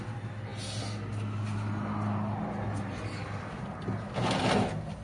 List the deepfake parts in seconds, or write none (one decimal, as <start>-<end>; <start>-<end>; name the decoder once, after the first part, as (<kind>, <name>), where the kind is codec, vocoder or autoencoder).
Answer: none